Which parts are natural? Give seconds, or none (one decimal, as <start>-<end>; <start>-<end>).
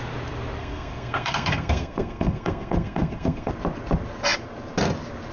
0.0-0.6; 3.5-5.3